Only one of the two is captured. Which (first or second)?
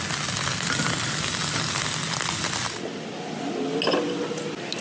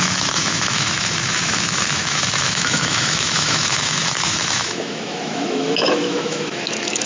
first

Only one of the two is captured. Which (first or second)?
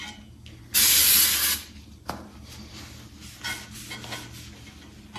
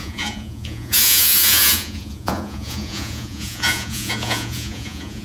first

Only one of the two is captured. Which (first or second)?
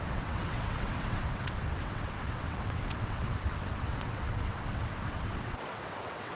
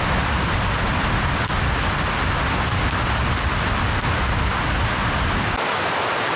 second